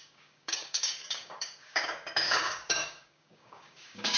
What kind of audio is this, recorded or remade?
remade